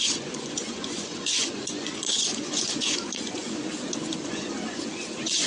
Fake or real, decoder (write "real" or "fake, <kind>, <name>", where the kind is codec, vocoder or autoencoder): fake, vocoder, Vocos